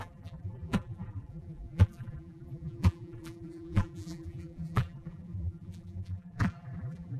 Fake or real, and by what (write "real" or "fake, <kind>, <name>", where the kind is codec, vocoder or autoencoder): fake, vocoder, BigVGAN v2